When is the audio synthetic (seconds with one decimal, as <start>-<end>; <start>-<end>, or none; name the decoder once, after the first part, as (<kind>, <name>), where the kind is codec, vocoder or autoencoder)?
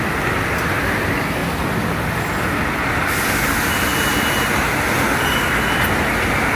none